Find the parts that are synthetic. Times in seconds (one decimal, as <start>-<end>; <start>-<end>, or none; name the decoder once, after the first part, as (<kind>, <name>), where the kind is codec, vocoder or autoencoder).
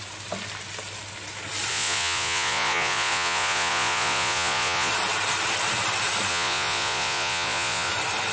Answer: 1.7-4.9 (vocoder, Vocos); 6.3-7.9